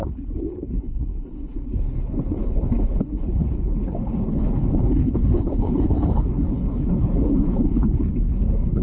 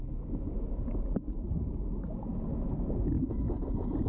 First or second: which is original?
second